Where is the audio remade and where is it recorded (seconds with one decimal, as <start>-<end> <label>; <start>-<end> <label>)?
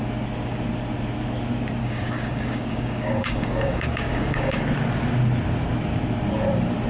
0.0-1.8 recorded; 1.8-4.6 remade; 4.6-6.9 recorded